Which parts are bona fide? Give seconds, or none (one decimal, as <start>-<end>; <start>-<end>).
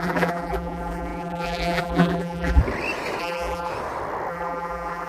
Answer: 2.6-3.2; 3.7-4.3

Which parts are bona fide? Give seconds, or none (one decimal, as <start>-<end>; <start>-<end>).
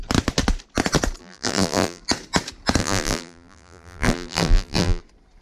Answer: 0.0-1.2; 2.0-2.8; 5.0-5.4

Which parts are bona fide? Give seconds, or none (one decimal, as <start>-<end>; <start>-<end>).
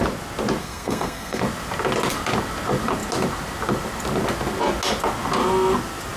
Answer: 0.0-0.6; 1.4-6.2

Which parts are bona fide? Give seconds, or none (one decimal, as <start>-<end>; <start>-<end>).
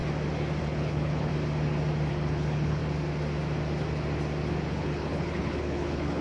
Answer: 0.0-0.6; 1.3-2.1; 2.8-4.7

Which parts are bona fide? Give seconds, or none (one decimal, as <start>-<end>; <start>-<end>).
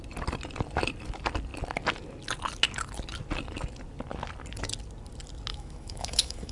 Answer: 0.0-5.5